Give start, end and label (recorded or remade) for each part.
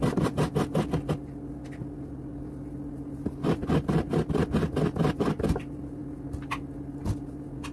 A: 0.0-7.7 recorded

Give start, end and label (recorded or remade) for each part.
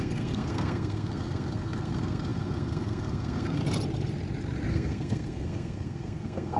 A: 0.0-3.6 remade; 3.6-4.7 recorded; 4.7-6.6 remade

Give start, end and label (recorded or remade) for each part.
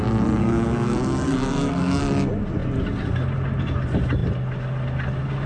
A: 0.0-0.4 recorded; 0.4-2.0 remade; 2.0-5.5 recorded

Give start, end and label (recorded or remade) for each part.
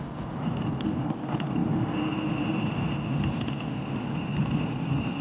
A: 0.0-5.2 recorded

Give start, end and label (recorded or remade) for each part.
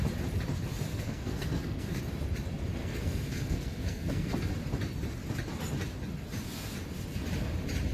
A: 0.0-0.9 recorded; 0.9-2.0 remade; 2.0-2.8 recorded; 2.8-4.5 remade; 4.5-7.9 recorded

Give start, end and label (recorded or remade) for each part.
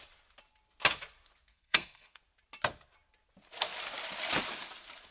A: 0.0-1.5 recorded; 1.5-2.2 remade; 2.2-5.1 recorded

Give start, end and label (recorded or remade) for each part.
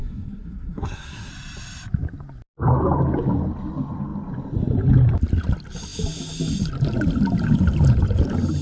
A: 0.0-1.3 remade; 1.3-8.6 recorded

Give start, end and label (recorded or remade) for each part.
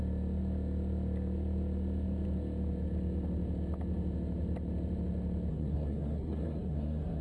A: 0.0-5.5 recorded; 5.5-7.2 remade